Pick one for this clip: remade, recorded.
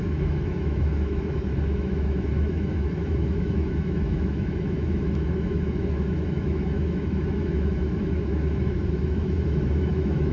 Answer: remade